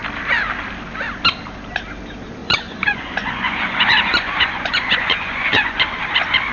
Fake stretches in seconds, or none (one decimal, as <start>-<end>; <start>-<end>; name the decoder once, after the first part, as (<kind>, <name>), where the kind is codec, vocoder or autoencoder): 2.4-5.9 (vocoder, Vocos)

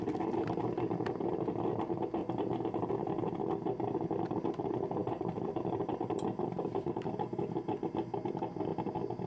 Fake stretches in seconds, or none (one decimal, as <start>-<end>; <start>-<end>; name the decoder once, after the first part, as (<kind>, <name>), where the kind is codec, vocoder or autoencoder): 2.2-2.9 (vocoder, BigVGAN v2); 5.0-8.1

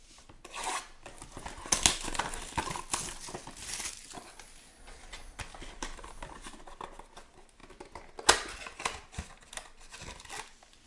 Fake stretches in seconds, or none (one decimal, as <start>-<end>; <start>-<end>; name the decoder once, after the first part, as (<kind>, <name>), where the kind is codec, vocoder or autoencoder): none

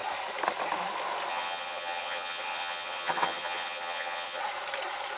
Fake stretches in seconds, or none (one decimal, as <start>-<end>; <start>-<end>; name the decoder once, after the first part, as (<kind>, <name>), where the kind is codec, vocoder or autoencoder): 1.3-4.4 (vocoder, HiFi-GAN)

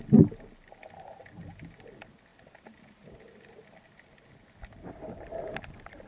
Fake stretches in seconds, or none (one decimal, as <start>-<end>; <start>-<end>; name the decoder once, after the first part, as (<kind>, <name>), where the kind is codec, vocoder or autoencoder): none